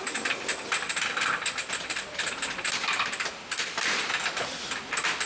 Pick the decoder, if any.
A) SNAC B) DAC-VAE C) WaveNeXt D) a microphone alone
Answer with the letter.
D